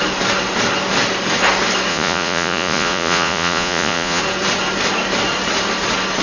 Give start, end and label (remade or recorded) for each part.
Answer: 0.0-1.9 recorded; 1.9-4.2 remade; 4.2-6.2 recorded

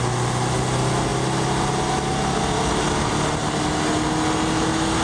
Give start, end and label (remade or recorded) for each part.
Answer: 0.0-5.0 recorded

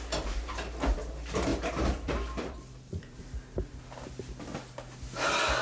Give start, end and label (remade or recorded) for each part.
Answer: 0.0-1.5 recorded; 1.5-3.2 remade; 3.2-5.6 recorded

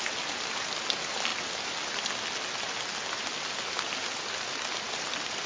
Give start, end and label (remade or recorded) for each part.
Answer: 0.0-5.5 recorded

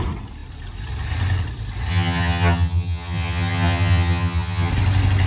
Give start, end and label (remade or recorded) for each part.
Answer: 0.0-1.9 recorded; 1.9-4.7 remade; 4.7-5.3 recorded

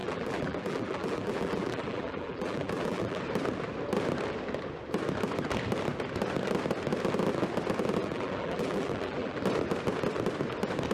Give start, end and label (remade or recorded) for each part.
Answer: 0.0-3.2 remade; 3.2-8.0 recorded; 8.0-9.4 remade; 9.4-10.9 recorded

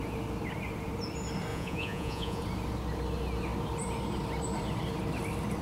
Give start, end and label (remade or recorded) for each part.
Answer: 0.0-1.5 recorded; 1.5-2.4 remade; 2.4-5.6 recorded

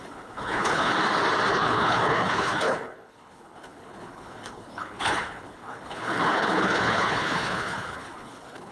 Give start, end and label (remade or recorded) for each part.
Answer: 0.0-0.9 remade; 0.9-1.5 recorded; 1.5-8.7 remade